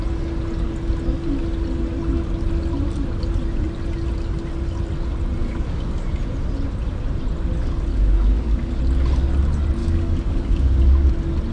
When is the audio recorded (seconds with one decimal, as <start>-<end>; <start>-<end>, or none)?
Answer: 0.0-5.4; 6.1-7.9; 8.8-9.8; 11.1-11.5